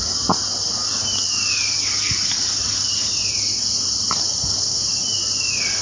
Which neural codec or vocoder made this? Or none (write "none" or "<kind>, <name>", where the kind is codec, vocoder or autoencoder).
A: none